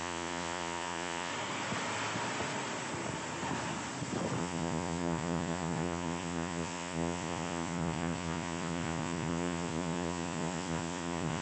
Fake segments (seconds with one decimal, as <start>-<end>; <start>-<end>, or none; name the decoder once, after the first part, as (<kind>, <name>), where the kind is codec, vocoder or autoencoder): 0.0-1.3 (vocoder, Vocos); 4.4-11.4